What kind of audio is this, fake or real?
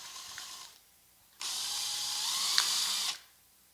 fake